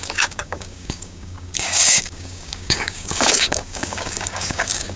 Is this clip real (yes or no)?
no